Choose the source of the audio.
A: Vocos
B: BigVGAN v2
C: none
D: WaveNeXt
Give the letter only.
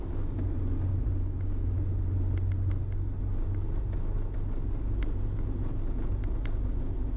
C